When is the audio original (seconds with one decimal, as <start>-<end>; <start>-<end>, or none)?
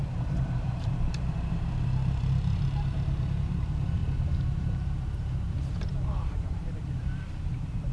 4.0-4.6